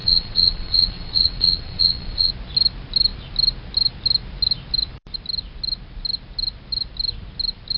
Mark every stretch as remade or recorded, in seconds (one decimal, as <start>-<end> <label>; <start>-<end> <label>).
0.0-2.3 remade; 2.3-7.8 recorded